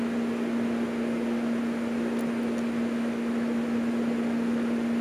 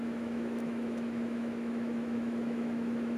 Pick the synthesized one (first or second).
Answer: second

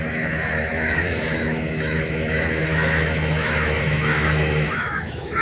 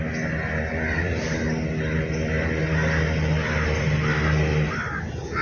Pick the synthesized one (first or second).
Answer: first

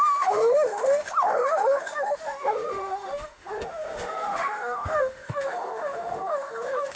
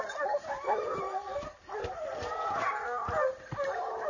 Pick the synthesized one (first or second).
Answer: first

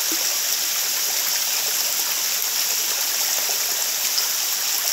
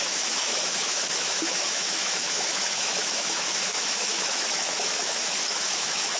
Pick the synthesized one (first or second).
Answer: second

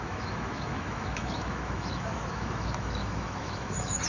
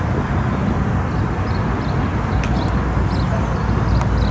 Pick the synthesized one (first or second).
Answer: first